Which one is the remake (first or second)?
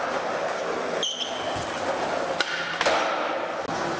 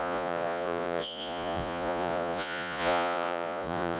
second